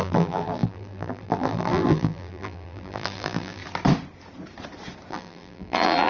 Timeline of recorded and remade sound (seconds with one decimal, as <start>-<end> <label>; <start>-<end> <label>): 0.0-3.6 remade; 3.6-5.1 recorded; 5.1-6.1 remade